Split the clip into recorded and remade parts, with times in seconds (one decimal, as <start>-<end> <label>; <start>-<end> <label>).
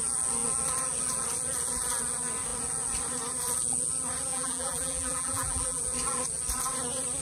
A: 0.0-4.3 recorded; 4.3-5.8 remade; 5.8-7.2 recorded